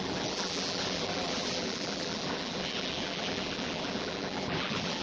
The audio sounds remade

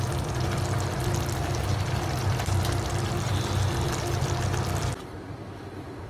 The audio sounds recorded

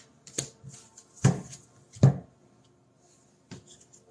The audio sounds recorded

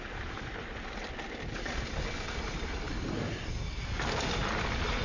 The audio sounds recorded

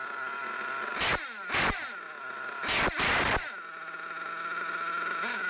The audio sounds recorded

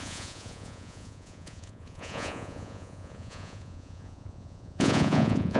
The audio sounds remade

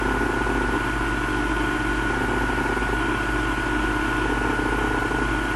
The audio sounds recorded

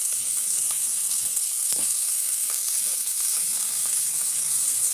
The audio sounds remade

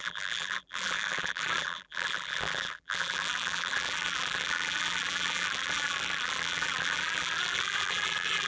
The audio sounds remade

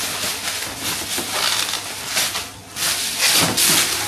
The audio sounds recorded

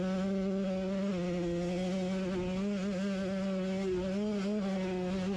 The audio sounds recorded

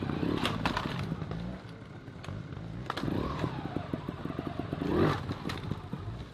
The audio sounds recorded